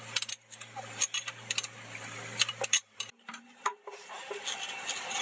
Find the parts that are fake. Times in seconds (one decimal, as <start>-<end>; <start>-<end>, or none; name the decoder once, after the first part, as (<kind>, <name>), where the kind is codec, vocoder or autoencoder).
none